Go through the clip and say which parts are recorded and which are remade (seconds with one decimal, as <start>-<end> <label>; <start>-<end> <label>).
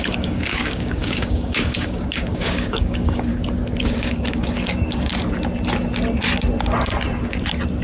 0.0-3.3 remade; 3.3-3.8 recorded; 3.8-5.1 remade; 5.1-7.8 recorded